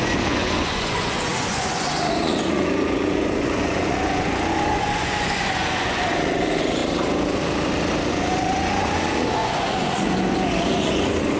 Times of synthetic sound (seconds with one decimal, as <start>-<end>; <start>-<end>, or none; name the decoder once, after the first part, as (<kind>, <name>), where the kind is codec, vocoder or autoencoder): 0.0-6.8 (vocoder, Vocos); 8.1-11.4